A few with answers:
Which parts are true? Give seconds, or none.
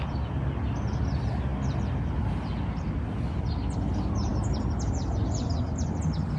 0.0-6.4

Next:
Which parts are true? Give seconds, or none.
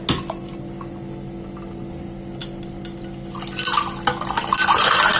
0.0-5.2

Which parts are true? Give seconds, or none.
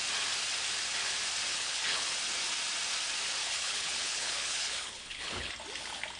0.0-1.5; 2.1-3.4; 5.5-6.2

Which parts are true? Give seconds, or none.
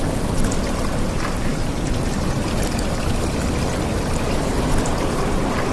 0.0-5.7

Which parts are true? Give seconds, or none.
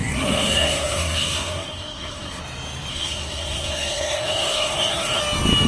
2.4-2.9; 5.2-5.7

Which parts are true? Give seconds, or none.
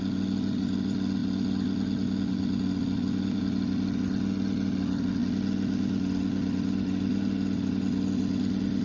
0.0-8.8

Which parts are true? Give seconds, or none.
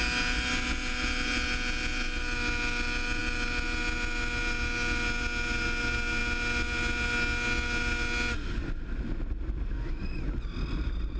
0.0-11.2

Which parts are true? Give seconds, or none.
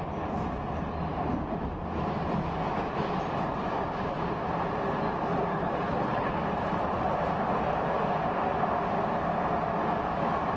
0.0-5.5; 6.3-10.6